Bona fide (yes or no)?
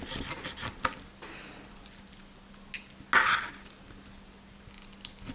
yes